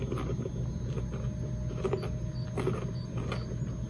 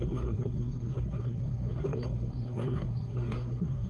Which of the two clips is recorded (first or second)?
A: first